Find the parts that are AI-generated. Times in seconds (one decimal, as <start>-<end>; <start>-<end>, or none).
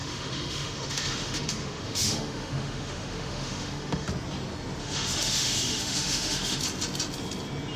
0.0-4.1; 4.8-6.6